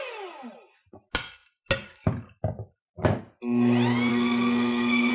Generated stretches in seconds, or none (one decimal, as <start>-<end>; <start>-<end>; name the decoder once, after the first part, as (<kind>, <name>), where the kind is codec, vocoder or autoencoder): 4.1-5.1 (codec, SNAC)